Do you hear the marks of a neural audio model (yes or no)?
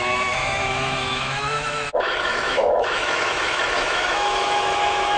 yes